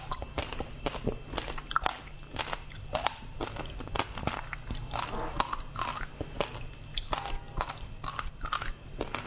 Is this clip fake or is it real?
real